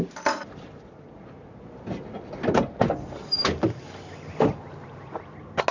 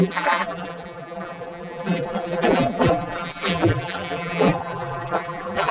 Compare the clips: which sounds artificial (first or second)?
second